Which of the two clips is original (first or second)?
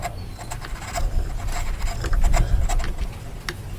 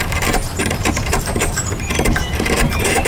first